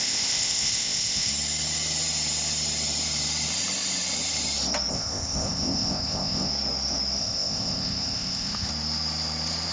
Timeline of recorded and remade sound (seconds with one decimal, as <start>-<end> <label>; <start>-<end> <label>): 0.0-1.3 remade; 1.3-4.9 recorded; 4.9-6.5 remade; 6.5-7.2 recorded; 7.2-8.7 remade; 8.7-9.7 recorded